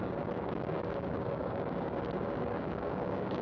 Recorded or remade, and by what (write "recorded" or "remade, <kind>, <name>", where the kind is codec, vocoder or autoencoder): remade, codec, DAC